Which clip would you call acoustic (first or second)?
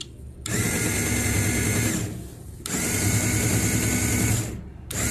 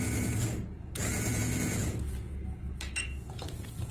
first